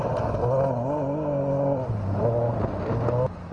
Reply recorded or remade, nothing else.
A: recorded